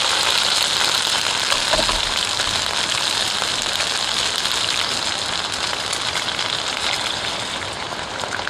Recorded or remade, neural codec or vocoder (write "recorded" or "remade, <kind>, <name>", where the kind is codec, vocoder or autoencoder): recorded